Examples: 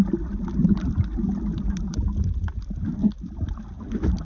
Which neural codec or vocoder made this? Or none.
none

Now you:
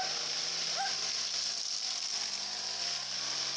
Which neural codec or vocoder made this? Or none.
none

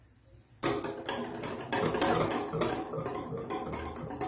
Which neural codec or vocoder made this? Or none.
none